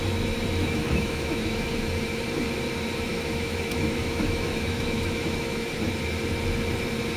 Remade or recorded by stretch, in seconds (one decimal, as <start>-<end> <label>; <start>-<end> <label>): 0.0-0.6 recorded; 0.6-1.9 remade; 1.9-3.1 recorded; 3.1-5.7 remade; 5.7-7.2 recorded